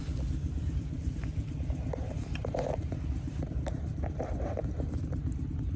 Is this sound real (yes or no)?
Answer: yes